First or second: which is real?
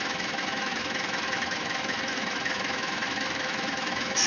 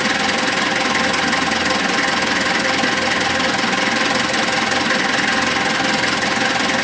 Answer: second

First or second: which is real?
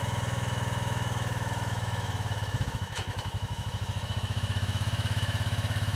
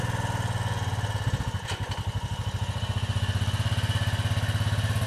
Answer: second